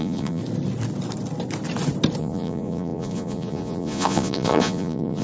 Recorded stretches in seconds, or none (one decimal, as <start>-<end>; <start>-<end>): 0.4-2.2